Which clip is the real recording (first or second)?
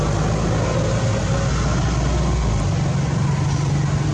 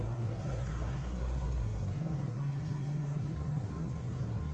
first